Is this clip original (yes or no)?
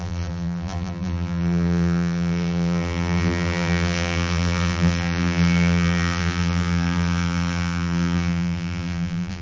no